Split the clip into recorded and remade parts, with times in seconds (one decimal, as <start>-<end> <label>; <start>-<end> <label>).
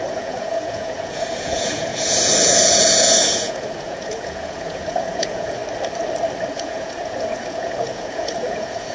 0.0-5.6 remade; 5.6-6.5 recorded; 6.5-8.9 remade